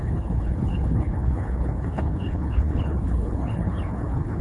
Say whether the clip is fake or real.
fake